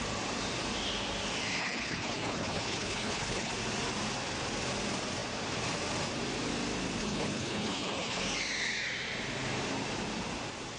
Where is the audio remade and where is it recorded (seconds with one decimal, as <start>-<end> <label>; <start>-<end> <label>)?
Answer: 0.0-1.6 recorded; 1.6-3.5 remade; 3.5-7.0 recorded; 7.0-8.2 remade; 8.2-10.8 recorded